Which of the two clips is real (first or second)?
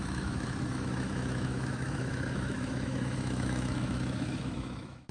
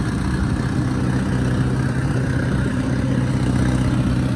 second